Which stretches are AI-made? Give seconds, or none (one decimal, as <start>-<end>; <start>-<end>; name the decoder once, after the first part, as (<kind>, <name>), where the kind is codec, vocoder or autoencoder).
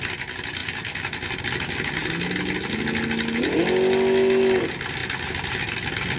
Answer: none